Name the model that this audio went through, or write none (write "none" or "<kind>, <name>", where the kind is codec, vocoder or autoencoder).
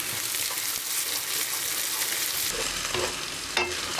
none